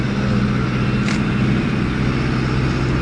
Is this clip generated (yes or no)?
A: no